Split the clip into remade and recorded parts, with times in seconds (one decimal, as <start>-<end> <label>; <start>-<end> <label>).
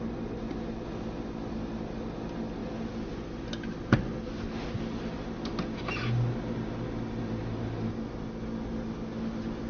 0.0-9.7 recorded